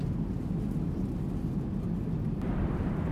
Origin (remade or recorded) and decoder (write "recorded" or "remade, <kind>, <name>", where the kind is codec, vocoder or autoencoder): recorded